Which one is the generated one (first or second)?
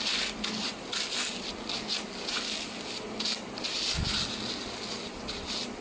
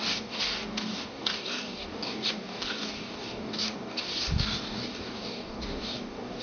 second